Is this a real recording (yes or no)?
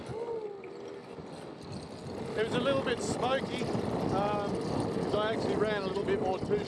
yes